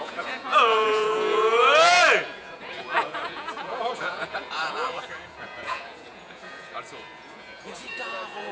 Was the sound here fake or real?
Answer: fake